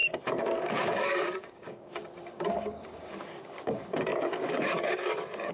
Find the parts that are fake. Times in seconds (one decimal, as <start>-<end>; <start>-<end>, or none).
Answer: 0.0-5.5